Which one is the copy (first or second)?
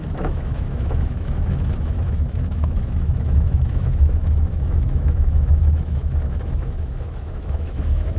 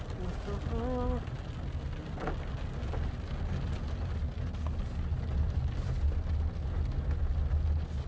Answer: first